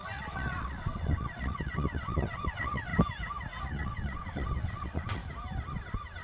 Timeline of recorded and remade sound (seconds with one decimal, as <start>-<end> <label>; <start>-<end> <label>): 0.0-2.9 remade; 2.9-3.6 recorded; 3.6-5.2 remade; 5.2-5.7 recorded; 5.7-6.2 remade